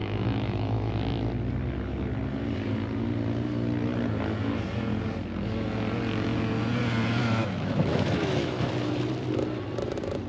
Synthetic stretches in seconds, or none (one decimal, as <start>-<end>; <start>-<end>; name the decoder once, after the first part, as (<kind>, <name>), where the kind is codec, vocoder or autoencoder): 0.0-0.9 (autoencoder, DAC-VAE); 7.2-8.7